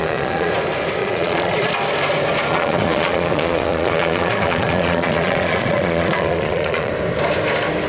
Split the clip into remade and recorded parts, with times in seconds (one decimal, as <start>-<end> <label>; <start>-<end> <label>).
0.0-0.5 remade; 0.5-1.0 recorded; 1.0-1.7 remade; 1.7-2.5 recorded; 2.5-6.9 remade; 6.9-7.9 recorded